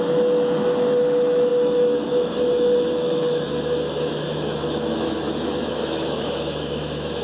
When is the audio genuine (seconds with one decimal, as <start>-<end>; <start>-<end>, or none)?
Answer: none